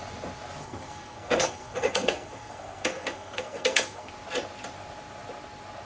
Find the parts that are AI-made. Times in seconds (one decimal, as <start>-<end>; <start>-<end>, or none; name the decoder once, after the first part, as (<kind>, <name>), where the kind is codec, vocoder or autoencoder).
0.6-4.1 (codec, SNAC)

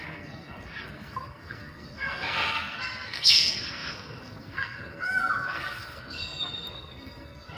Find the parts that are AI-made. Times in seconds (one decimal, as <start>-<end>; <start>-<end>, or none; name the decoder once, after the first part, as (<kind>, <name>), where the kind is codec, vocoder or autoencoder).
0.0-7.6 (codec, SNAC)

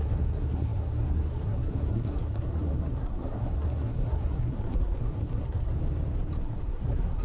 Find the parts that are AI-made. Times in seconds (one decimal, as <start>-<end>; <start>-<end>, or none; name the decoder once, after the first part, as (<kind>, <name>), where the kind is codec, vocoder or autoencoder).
0.0-5.7 (codec, SNAC); 6.4-7.2

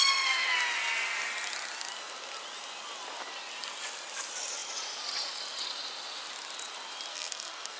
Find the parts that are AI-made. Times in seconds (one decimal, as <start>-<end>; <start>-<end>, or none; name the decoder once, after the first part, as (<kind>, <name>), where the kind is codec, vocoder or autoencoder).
0.0-0.6 (codec, SNAC); 7.1-7.8

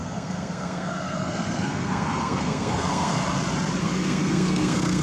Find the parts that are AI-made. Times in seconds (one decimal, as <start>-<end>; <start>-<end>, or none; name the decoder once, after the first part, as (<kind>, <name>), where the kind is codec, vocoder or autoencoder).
0.0-3.2 (codec, SNAC); 3.8-5.0

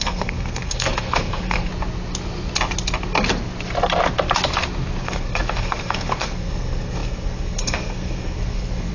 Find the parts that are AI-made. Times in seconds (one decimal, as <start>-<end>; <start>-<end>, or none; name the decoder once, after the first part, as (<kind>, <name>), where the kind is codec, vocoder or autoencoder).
0.0-1.7 (codec, SNAC); 5.0-8.9

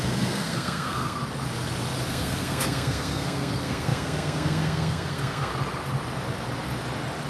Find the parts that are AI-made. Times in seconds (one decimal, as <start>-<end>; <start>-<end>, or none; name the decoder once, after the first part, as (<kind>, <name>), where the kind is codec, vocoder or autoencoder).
0.0-1.2 (codec, SNAC); 2.1-5.5